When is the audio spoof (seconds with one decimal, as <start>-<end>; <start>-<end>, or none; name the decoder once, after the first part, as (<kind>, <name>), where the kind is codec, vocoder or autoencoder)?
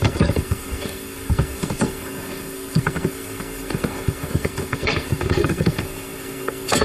0.0-6.8 (codec, SNAC)